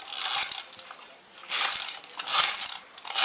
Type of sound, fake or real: real